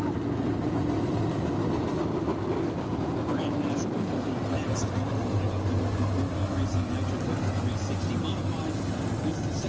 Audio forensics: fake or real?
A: real